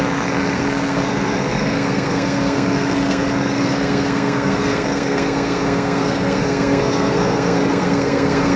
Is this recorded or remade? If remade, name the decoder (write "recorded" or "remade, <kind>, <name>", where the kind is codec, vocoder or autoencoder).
remade, codec, SNAC